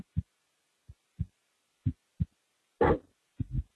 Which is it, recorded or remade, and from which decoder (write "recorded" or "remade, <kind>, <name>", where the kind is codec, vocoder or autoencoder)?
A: recorded